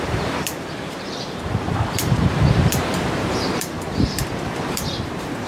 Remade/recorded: remade